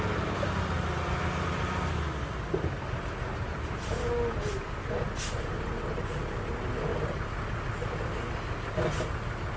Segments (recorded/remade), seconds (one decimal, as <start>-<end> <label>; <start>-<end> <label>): 0.0-9.6 recorded